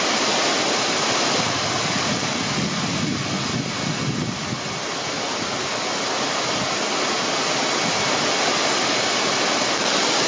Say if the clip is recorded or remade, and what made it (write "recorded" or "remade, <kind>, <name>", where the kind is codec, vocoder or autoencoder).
recorded